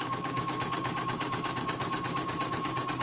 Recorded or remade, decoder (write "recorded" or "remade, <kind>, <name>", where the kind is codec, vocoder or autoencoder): remade, codec, DAC